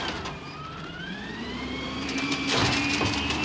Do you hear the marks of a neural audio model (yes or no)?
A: yes